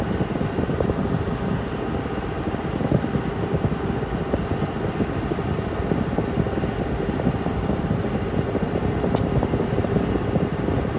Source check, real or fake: real